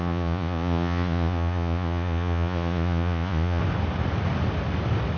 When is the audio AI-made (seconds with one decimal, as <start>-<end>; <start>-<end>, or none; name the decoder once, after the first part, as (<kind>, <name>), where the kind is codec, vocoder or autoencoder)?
0.0-3.6 (vocoder, Vocos)